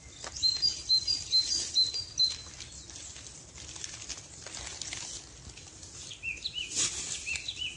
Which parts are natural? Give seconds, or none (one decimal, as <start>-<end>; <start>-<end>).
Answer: 0.0-7.8